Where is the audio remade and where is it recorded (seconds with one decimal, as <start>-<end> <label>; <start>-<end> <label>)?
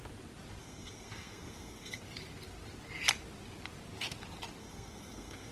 0.0-0.6 recorded; 0.6-2.0 remade; 2.0-4.6 recorded; 4.6-5.5 remade